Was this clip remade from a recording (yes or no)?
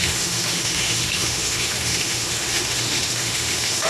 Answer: yes